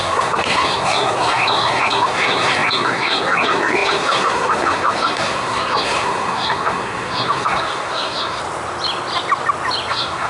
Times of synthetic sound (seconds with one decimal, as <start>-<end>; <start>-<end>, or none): 0.0-8.4; 9.9-10.3